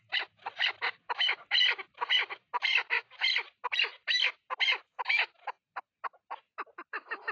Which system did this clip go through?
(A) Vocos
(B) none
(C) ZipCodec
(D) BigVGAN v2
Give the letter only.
D